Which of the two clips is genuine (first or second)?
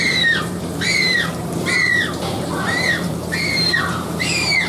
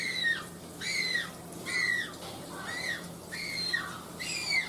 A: second